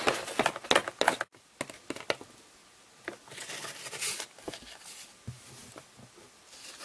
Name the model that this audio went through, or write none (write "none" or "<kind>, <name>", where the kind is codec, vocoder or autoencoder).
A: none